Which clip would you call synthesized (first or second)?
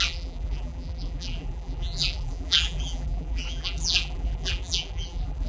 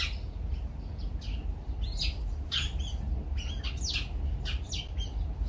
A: first